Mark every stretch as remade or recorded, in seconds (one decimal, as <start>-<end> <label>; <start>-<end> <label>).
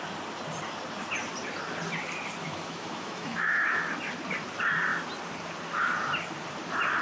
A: 0.0-2.4 recorded; 2.4-3.9 remade; 3.9-7.0 recorded